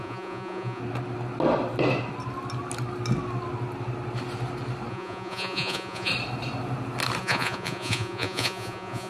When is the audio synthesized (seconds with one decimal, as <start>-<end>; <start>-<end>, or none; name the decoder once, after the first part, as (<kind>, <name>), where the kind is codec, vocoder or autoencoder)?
0.0-0.8 (vocoder, Vocos); 4.9-6.1; 7.2-9.1